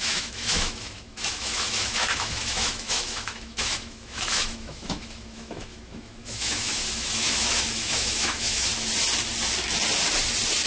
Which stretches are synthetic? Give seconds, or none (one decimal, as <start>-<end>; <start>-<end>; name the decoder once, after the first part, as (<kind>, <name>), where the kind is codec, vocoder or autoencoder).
0.0-8.7 (autoencoder, DAC-VAE)